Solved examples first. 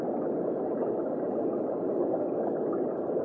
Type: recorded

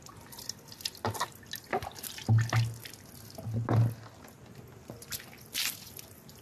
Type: recorded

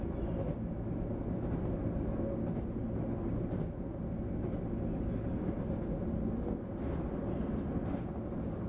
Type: recorded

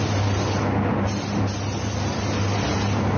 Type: recorded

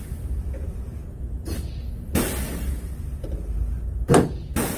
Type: recorded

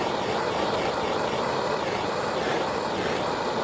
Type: remade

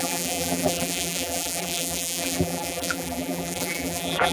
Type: remade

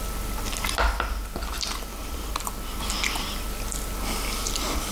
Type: recorded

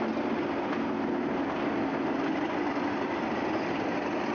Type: recorded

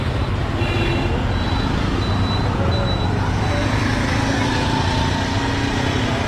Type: recorded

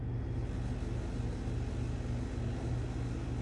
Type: recorded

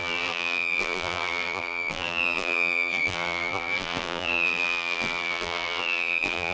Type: remade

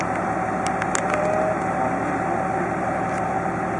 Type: recorded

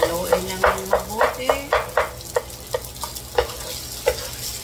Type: recorded